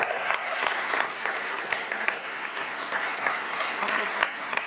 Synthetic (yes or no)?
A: yes